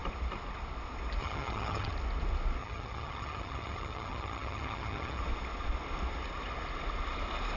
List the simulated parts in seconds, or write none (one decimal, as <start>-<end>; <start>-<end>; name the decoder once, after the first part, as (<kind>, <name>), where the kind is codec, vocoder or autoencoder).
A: 1.2-1.9 (vocoder, HiFi-GAN); 2.6-5.2